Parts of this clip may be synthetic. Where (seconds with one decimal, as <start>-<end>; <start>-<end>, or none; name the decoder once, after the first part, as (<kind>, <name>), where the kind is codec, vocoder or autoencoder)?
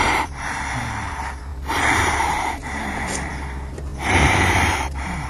0.0-5.3 (vocoder, BigVGAN v2)